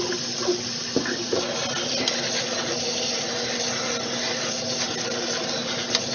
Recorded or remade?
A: recorded